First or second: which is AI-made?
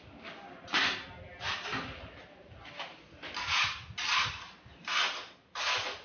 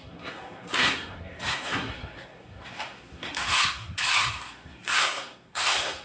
second